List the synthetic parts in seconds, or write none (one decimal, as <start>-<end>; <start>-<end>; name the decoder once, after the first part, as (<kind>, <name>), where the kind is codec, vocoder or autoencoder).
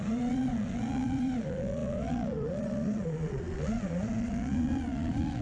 0.0-5.4 (vocoder, Vocos)